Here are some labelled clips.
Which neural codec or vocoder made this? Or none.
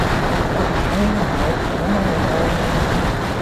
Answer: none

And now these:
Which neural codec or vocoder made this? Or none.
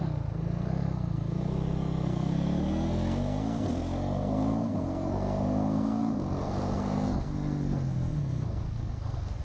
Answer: codec, SNAC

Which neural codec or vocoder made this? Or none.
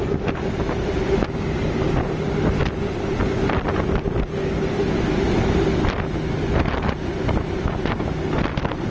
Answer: none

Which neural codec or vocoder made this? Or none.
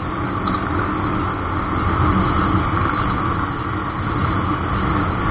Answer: none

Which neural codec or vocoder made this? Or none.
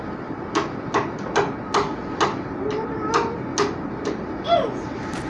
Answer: none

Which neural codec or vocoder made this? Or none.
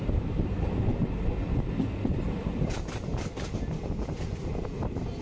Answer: none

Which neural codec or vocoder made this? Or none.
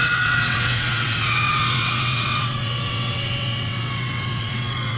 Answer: vocoder, WaveNeXt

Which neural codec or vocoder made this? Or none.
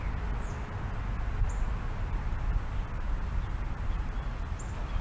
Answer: none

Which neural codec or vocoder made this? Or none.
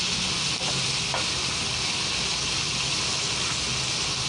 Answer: none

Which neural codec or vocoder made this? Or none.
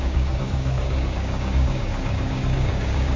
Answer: codec, DAC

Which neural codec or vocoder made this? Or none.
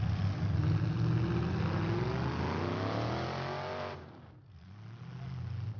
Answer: none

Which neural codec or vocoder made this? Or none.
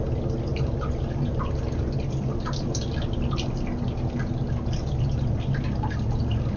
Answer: none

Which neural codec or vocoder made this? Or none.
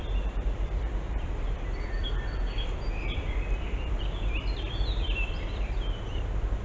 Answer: vocoder, BigVGAN v2